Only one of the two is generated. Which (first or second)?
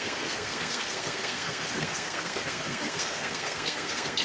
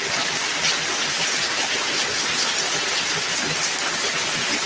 first